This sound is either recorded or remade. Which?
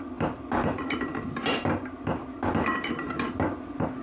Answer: recorded